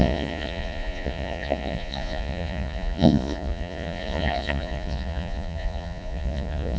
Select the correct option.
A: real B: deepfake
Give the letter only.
B